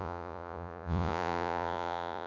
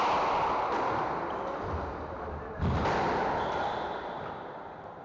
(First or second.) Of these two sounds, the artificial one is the first